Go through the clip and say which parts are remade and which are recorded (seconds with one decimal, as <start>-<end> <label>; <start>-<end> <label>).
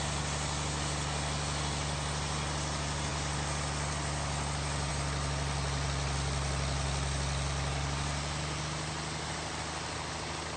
0.0-10.6 recorded